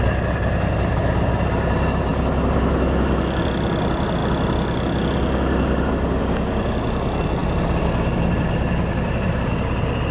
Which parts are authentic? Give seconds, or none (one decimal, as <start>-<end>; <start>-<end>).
0.0-10.1